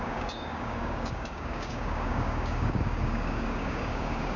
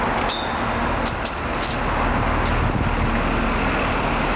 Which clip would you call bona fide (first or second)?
second